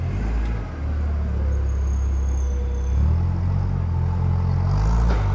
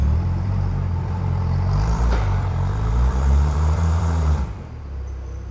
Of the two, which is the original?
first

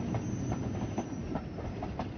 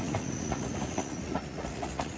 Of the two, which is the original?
first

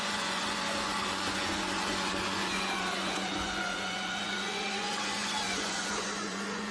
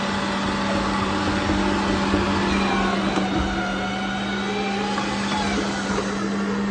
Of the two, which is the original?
second